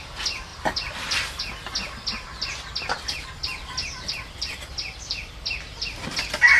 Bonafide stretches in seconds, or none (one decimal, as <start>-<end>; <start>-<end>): 0.0-0.5; 1.4-3.5